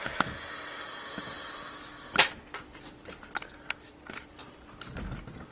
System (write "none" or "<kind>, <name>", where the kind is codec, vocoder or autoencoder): none